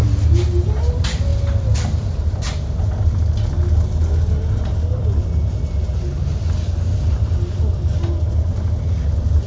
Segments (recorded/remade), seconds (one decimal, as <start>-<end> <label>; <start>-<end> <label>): 0.0-9.5 recorded